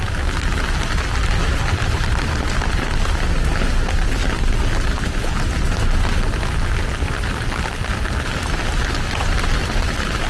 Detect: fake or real real